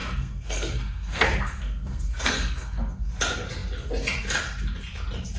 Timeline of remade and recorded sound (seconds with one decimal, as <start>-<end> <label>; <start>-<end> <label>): 0.0-3.1 remade; 3.1-5.4 recorded